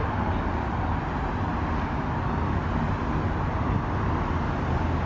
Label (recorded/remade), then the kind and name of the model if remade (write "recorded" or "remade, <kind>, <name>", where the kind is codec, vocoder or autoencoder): recorded